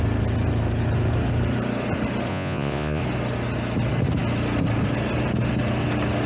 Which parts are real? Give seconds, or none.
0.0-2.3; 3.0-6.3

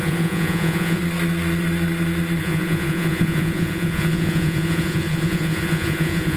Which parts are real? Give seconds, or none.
1.0-2.4

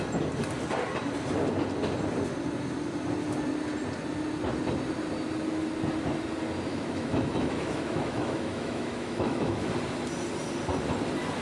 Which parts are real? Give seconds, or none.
0.0-6.7; 9.7-11.4

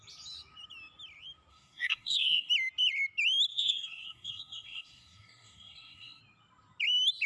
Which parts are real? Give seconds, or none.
0.0-1.5; 2.5-3.5; 6.2-7.3

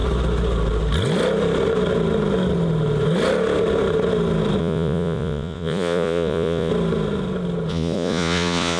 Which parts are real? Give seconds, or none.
0.0-4.6; 6.7-7.7

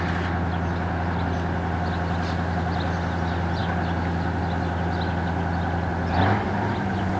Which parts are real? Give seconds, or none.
0.0-7.2

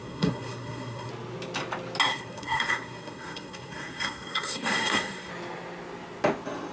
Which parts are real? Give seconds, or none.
1.1-2.1; 5.3-6.7

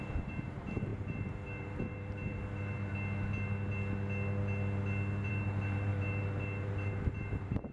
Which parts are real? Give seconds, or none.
2.9-5.3